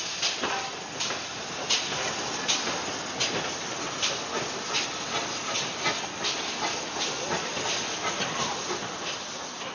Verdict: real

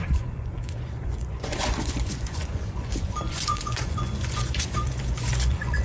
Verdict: fake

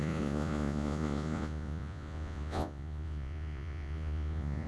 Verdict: fake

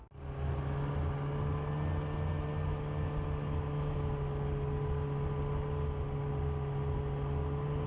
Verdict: real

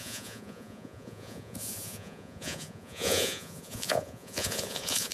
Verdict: fake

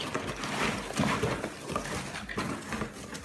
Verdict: real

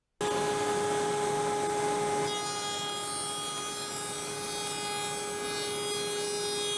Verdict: real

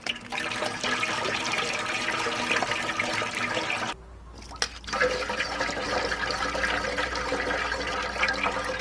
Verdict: real